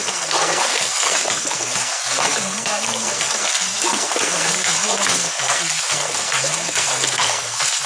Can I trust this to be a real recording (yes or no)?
no